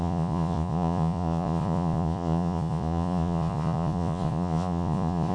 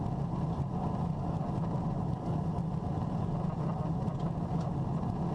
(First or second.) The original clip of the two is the second